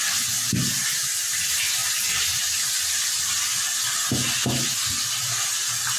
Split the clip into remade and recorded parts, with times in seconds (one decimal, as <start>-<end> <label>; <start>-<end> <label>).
0.0-6.0 recorded